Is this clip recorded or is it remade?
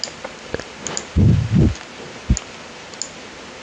recorded